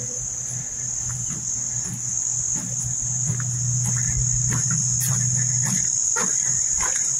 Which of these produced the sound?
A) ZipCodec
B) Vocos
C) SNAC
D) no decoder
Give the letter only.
D